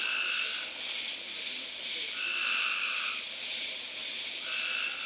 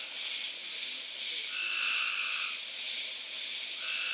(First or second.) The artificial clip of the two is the first